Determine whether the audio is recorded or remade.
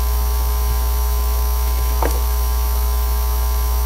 remade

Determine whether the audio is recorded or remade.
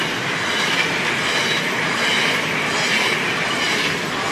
recorded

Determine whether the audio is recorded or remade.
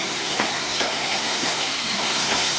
remade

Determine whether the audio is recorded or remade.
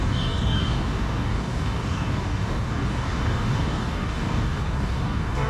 remade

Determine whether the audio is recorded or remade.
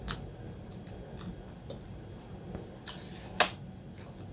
recorded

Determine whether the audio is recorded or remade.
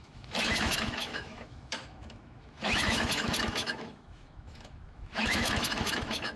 remade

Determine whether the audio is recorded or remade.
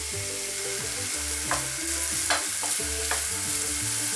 recorded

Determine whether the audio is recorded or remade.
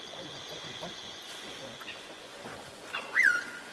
remade